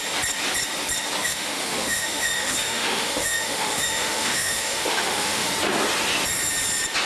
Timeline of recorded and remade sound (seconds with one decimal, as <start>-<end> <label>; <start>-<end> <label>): 0.0-1.2 recorded; 1.2-5.5 remade; 5.5-7.1 recorded